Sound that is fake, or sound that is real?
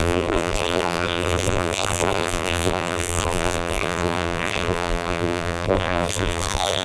fake